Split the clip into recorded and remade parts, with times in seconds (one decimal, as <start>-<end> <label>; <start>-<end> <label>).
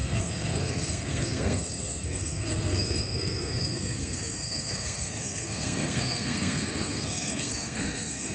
0.0-8.3 remade